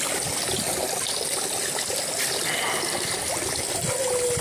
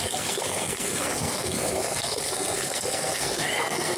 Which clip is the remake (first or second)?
second